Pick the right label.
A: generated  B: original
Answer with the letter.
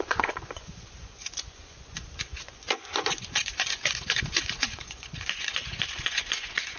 A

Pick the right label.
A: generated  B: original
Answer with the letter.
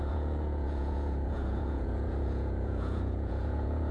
A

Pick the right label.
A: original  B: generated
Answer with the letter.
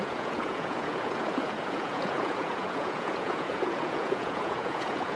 B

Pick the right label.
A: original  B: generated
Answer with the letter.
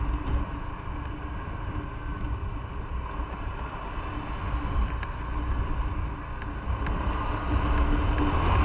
A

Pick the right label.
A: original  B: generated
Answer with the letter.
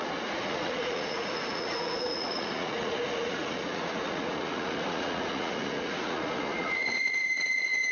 B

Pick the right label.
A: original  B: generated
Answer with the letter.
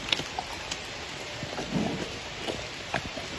A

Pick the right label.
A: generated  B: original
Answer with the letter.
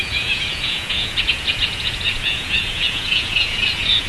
A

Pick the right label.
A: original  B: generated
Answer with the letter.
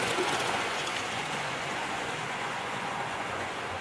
B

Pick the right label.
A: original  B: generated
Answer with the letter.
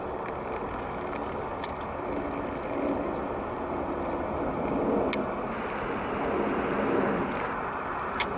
A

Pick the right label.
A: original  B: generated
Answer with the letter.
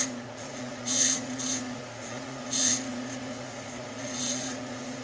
B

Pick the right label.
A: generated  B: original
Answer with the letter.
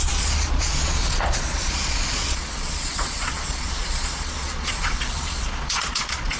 A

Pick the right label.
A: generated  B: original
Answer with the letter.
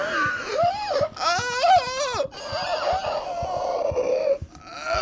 B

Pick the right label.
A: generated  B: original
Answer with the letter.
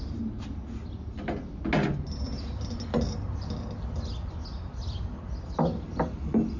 B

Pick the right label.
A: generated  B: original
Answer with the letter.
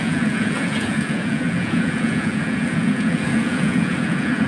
A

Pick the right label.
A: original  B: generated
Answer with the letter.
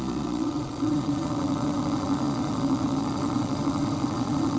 B